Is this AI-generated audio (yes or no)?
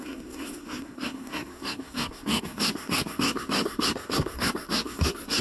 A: yes